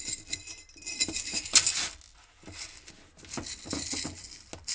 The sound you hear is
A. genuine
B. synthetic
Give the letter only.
A